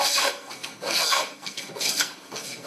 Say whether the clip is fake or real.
fake